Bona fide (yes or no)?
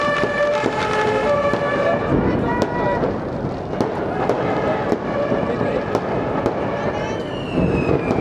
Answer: yes